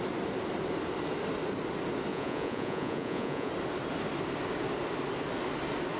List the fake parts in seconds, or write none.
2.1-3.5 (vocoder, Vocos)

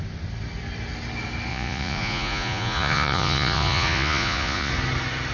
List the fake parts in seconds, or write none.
1.5-4.7 (vocoder, Vocos)